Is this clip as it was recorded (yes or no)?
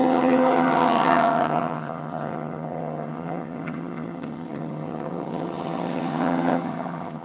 no